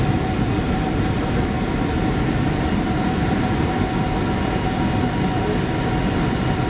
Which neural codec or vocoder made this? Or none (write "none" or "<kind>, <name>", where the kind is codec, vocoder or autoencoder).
none